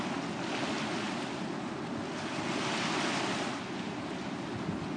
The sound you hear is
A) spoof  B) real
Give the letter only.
B